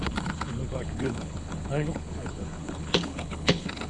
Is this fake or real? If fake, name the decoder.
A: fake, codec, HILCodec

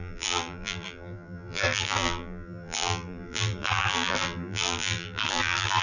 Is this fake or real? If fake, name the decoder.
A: fake, vocoder, BigVGAN v2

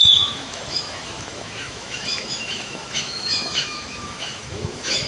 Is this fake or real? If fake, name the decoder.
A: fake, autoencoder, DAC-VAE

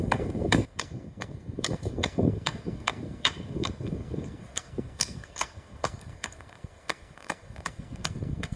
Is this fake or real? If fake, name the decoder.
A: fake, codec, SNAC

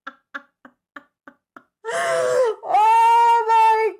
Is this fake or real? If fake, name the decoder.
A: real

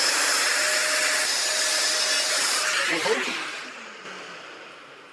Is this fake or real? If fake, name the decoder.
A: real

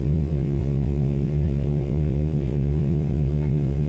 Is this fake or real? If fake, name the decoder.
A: fake, vocoder, WaveNeXt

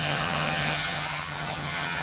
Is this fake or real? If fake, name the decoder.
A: fake, vocoder, HiFi-GAN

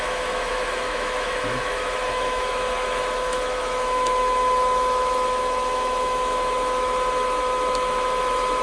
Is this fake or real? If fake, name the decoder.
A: fake, autoencoder, DAC-VAE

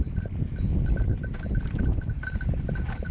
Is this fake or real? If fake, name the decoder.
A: real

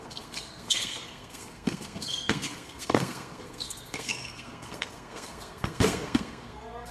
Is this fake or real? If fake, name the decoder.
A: fake, codec, SNAC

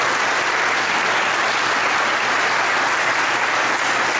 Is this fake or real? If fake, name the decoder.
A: fake, vocoder, BigVGAN v2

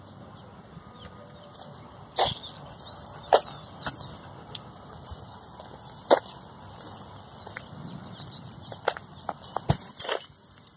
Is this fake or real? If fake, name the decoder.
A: real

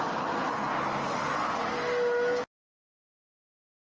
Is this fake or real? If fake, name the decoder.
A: real